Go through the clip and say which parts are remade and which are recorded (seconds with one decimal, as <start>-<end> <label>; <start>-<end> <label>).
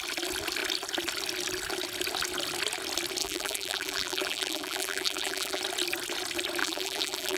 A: 0.0-3.2 recorded; 3.2-5.6 remade; 5.6-6.6 recorded; 6.6-7.4 remade